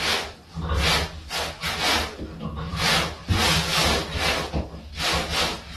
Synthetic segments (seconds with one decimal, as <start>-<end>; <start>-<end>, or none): none